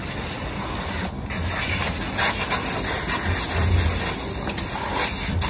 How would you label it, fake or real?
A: real